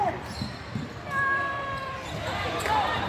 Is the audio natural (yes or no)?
no